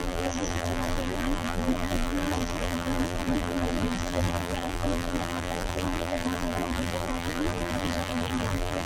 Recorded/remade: remade